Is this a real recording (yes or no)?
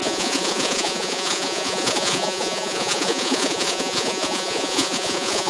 no